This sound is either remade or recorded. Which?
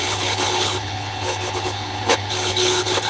remade